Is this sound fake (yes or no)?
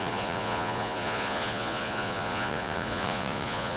yes